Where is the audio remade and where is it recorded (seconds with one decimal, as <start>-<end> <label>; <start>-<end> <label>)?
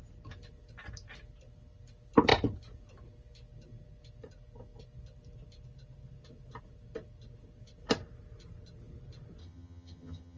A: 0.0-9.4 recorded; 9.4-10.4 remade